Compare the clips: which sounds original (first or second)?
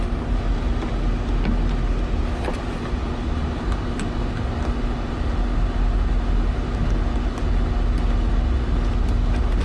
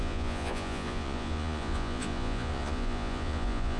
first